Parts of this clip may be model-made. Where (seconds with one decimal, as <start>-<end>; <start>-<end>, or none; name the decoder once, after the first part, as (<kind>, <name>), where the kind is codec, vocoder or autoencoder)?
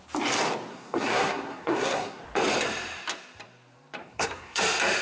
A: 0.7-2.2 (codec, SNAC); 4.0-4.6